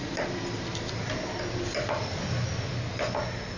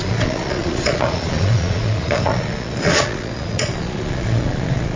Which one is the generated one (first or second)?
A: second